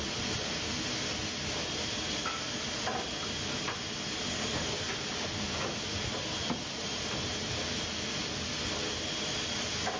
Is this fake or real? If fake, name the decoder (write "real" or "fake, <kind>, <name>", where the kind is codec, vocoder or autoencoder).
real